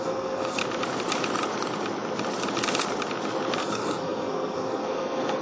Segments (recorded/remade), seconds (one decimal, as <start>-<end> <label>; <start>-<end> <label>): 0.0-0.6 remade; 0.6-3.6 recorded; 3.6-5.4 remade